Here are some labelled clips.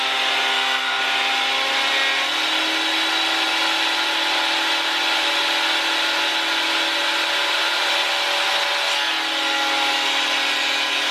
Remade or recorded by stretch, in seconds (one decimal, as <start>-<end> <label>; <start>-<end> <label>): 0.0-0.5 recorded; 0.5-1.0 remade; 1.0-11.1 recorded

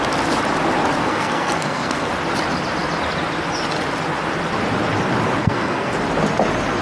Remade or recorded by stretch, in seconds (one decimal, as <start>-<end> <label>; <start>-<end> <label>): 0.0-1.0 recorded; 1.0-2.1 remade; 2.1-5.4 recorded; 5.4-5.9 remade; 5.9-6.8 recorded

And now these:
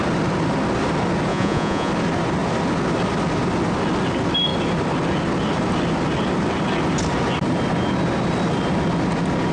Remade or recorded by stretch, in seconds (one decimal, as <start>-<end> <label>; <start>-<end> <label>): 0.0-1.3 recorded; 1.3-1.9 remade; 1.9-9.5 recorded